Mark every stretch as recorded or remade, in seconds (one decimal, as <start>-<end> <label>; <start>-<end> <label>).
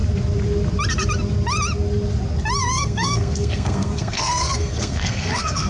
0.0-2.6 recorded; 2.6-5.7 remade